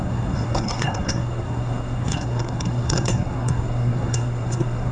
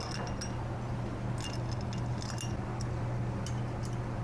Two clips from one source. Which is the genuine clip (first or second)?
second